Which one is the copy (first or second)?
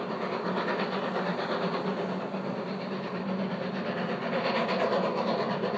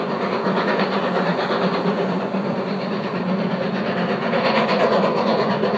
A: second